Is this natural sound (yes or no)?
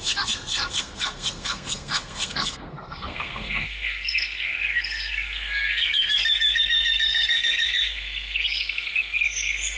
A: no